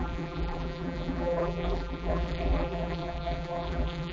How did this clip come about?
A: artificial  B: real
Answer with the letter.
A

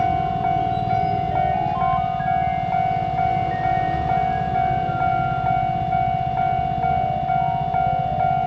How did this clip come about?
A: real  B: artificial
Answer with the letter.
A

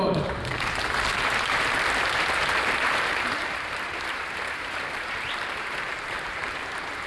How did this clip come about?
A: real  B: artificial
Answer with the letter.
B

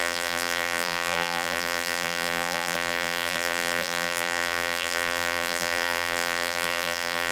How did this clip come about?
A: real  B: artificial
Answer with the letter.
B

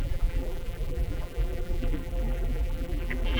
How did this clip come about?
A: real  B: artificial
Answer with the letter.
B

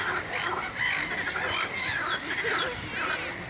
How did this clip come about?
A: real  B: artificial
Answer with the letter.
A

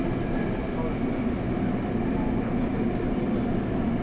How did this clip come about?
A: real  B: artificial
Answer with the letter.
A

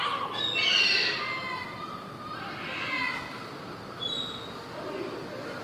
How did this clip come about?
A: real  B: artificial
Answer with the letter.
A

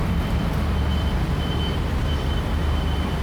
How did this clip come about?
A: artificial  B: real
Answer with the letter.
A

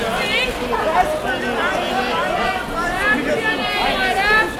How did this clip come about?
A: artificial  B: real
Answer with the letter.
B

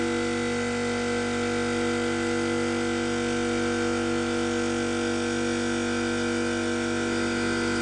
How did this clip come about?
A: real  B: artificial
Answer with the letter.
A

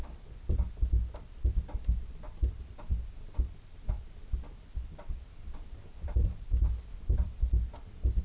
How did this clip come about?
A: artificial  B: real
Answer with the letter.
A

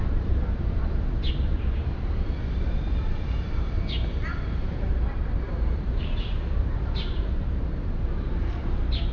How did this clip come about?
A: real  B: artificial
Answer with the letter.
B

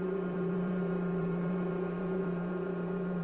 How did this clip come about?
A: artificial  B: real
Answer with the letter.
A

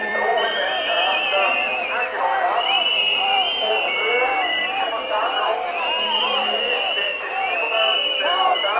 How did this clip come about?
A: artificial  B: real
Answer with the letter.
A